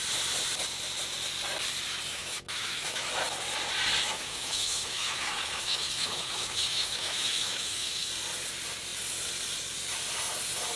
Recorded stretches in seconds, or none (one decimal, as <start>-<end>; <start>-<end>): 0.0-2.1; 3.1-4.0; 8.1-10.8